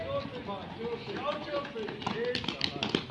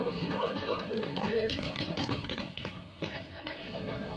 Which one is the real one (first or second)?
first